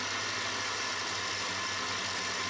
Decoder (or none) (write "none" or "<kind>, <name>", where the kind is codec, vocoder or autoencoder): none